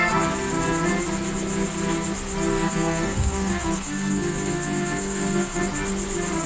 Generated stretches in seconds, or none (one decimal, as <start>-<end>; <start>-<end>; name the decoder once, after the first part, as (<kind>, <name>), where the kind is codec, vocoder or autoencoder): 2.5-5.6 (codec, SNAC)